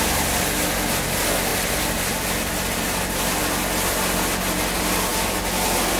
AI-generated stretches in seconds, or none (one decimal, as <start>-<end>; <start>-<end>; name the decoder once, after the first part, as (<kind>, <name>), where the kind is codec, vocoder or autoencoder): 1.5-3.4 (vocoder, BigVGAN v2)